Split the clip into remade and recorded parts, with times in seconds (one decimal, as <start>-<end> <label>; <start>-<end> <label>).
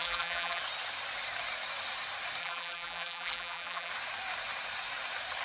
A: 0.0-0.6 remade; 0.6-2.4 recorded; 2.4-3.9 remade; 3.9-5.4 recorded